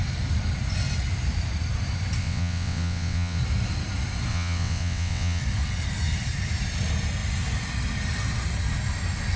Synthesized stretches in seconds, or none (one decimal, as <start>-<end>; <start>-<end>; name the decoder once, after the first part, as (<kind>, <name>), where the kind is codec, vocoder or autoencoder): 2.2-3.4 (vocoder, WaveNeXt); 4.3-5.4